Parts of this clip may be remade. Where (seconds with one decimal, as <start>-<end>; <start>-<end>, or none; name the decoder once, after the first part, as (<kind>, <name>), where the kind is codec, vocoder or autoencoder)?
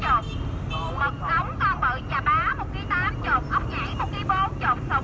none